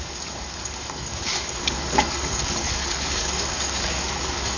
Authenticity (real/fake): fake